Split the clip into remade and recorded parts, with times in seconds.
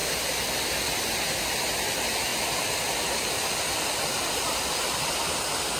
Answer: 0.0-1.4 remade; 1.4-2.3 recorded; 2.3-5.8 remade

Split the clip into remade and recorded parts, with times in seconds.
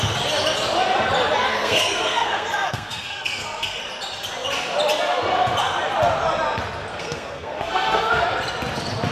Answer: 0.0-1.5 recorded; 1.5-3.8 remade; 3.8-6.9 recorded; 6.9-8.2 remade; 8.2-9.1 recorded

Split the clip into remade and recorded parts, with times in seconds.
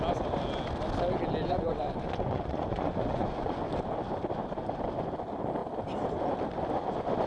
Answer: 0.0-1.4 recorded; 1.4-3.7 remade; 3.7-7.3 recorded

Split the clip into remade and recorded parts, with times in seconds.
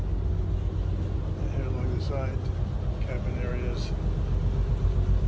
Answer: 0.0-5.3 recorded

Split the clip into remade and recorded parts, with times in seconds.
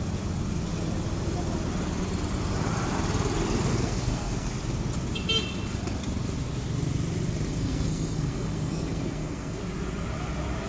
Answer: 0.0-3.7 recorded; 3.7-4.5 remade; 4.5-7.5 recorded; 7.5-9.6 remade; 9.6-10.7 recorded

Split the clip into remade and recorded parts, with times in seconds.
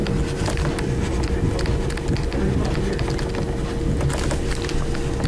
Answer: 0.0-5.3 recorded